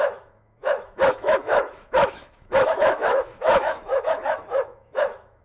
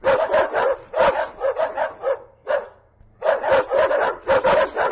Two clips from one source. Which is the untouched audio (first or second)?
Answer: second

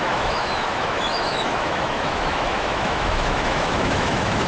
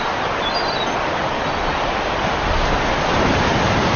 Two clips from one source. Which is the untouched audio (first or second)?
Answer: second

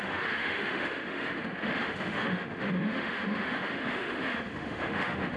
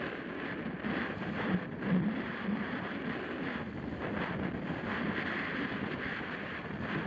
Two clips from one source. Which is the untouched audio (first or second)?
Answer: second